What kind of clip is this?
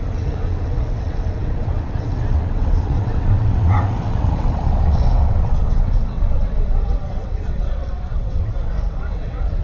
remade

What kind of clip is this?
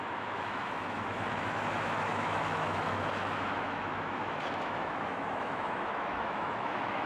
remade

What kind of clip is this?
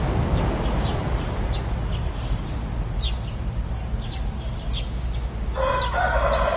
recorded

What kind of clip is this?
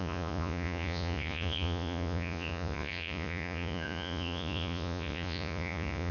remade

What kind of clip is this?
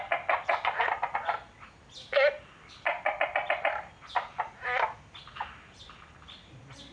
recorded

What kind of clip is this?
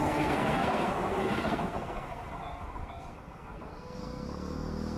remade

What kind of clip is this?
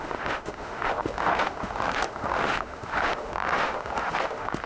remade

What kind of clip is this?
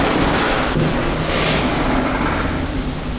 recorded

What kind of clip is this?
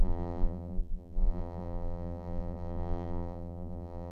remade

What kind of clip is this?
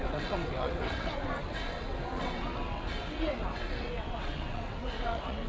remade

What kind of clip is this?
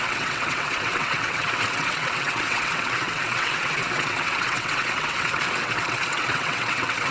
remade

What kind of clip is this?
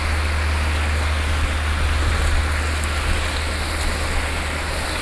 recorded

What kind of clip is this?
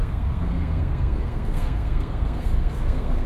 remade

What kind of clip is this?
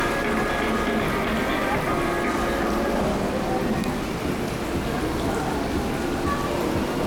recorded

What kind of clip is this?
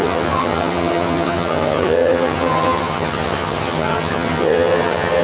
remade